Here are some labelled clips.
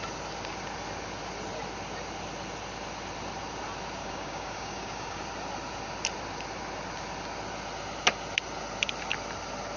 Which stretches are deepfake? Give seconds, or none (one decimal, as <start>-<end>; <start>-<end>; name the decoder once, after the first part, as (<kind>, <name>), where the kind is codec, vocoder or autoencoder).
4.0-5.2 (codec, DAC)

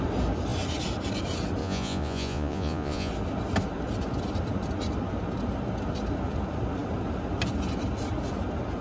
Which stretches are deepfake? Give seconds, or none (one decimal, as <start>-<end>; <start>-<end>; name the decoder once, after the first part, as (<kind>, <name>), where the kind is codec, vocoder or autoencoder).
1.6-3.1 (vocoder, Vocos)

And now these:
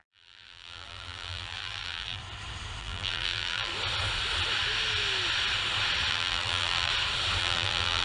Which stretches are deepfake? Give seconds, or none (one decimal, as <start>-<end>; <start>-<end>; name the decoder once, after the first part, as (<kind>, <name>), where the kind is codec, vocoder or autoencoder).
0.0-2.2 (vocoder, BigVGAN v2); 2.8-3.7; 6.1-6.9; 7.4-8.0

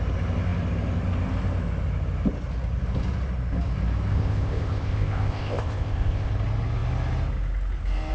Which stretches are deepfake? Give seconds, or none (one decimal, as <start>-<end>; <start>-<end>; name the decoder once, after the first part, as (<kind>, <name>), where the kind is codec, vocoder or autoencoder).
4.1-6.3 (codec, ZipCodec)

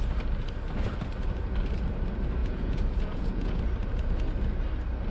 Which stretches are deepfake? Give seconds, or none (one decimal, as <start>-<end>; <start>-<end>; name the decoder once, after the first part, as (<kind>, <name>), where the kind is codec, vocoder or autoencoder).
2.4-3.6 (vocoder, Vocos)

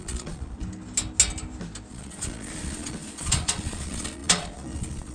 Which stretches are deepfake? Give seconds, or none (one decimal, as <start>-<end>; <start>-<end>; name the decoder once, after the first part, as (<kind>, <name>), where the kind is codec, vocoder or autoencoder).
0.0-0.6 (vocoder, Vocos); 1.9-5.1